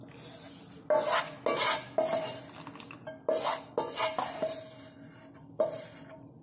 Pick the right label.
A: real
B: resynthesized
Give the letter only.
A